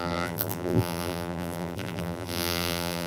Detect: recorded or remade remade